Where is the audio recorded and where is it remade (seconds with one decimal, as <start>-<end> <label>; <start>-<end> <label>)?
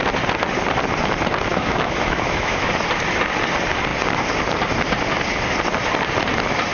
0.0-1.5 recorded; 1.5-2.7 remade; 2.7-6.7 recorded